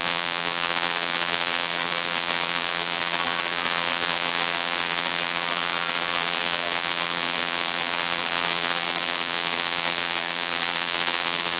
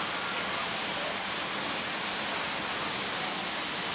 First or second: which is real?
second